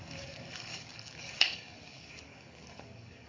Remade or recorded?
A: remade